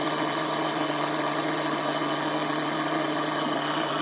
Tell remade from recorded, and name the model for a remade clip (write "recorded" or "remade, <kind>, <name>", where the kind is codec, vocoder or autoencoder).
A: recorded